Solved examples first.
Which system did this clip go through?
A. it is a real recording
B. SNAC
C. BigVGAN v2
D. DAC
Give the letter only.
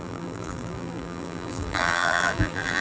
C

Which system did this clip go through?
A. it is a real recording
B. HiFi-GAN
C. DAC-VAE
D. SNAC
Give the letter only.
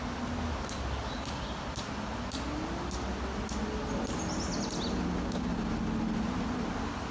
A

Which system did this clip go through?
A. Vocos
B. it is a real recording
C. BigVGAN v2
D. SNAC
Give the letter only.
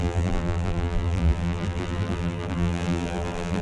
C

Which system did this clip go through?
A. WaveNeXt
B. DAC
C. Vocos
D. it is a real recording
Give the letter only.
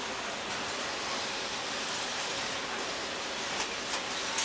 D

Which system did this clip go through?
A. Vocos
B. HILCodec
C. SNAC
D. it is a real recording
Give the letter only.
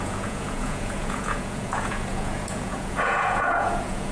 A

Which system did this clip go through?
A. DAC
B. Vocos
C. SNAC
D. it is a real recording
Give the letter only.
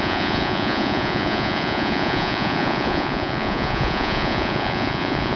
B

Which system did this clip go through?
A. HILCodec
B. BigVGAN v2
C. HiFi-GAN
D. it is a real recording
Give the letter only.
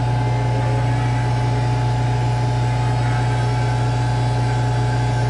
D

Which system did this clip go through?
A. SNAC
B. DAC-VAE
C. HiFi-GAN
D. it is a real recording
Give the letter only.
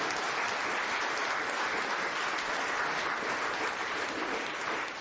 D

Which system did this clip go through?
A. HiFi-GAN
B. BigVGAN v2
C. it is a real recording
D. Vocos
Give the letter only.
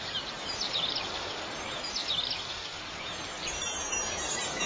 B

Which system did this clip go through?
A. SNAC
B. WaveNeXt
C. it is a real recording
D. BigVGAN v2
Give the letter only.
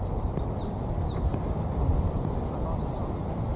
C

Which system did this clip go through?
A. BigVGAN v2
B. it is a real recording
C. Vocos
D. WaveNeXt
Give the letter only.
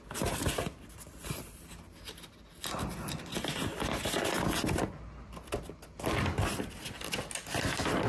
B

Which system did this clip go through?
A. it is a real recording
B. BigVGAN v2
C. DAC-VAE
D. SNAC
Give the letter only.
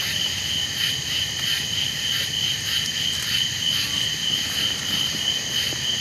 A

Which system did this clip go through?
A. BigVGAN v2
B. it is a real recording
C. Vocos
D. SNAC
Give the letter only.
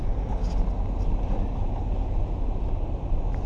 B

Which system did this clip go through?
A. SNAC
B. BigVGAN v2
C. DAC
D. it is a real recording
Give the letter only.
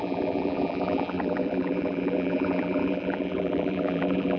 B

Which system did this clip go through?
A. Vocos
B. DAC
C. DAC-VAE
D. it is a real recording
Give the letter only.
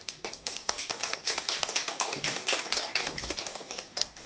B